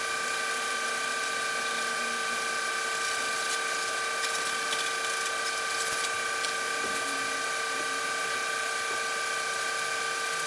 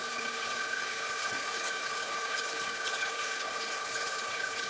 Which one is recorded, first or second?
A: first